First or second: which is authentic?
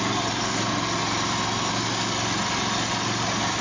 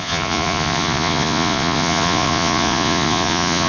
first